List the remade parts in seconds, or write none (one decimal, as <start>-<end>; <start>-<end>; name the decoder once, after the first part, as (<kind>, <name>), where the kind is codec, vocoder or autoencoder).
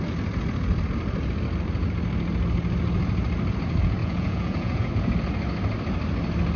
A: 4.0-4.9 (vocoder, Vocos)